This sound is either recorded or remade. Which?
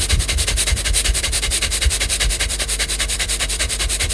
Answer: remade